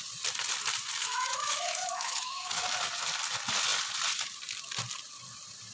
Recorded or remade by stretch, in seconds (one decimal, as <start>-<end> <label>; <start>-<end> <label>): 0.0-1.0 recorded; 1.0-2.6 remade; 2.6-5.7 recorded